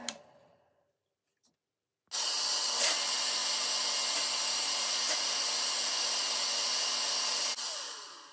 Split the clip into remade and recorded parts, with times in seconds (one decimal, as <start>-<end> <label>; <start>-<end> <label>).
0.0-8.3 recorded

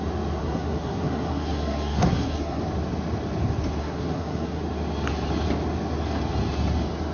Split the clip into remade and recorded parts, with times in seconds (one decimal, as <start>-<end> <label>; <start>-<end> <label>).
0.0-0.4 recorded; 0.4-2.6 remade; 2.6-3.8 recorded; 3.8-4.6 remade; 4.6-7.1 recorded

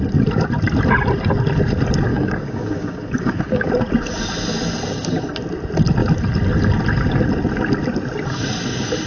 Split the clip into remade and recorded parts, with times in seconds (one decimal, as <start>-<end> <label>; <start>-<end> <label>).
0.0-2.1 recorded; 2.1-3.7 remade; 3.7-9.1 recorded